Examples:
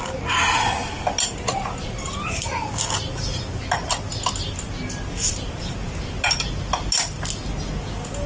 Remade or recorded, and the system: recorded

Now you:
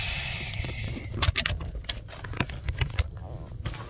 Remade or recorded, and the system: recorded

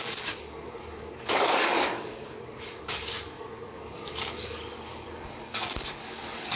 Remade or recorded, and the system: remade, codec, DAC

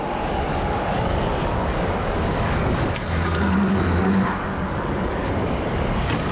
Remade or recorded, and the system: remade, codec, DAC